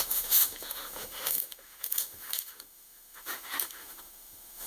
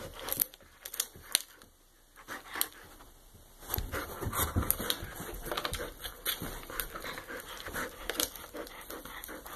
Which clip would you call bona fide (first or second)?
second